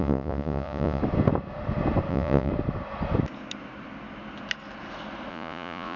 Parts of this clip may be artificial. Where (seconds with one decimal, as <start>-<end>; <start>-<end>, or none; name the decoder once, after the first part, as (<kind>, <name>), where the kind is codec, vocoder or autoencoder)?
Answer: 0.0-1.0 (vocoder, Vocos); 2.1-2.5; 5.3-6.0